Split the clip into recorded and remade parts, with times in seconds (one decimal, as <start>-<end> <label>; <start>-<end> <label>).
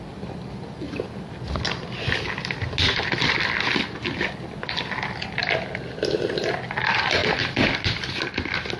0.0-8.8 recorded